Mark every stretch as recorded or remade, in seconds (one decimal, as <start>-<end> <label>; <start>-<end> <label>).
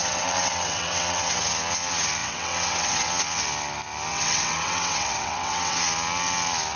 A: 0.0-1.4 remade; 1.4-2.2 recorded; 2.2-3.1 remade; 3.1-4.1 recorded; 4.1-5.8 remade; 5.8-6.8 recorded